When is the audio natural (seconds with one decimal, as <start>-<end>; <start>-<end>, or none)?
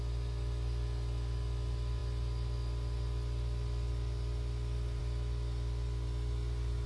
0.0-6.9